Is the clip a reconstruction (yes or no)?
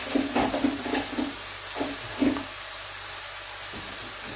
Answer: no